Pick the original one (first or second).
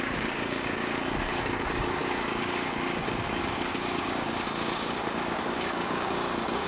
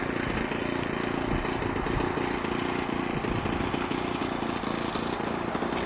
second